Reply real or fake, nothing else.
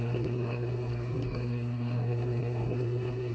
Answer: fake